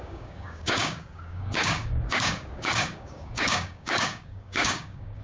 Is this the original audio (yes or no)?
no